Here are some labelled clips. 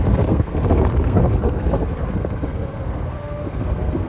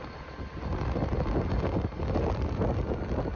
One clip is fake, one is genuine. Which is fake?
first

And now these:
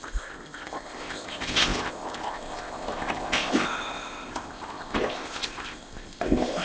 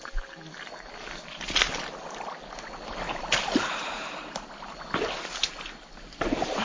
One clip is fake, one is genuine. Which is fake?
first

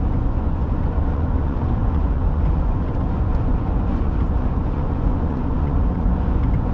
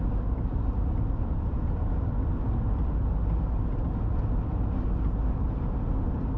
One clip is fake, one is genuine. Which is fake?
first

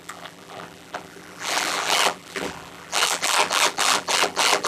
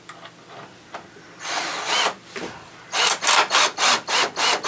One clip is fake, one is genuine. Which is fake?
first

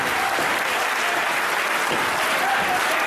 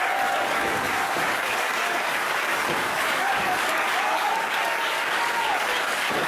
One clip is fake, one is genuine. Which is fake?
second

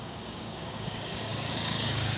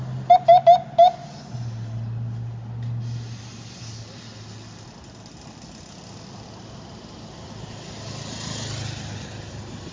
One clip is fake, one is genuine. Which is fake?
first